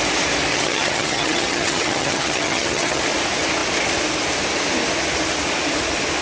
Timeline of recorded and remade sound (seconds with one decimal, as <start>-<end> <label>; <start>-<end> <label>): 0.0-0.5 recorded; 0.5-3.0 remade; 3.0-6.2 recorded